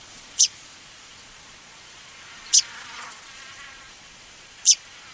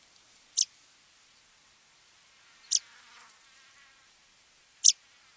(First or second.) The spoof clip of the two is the first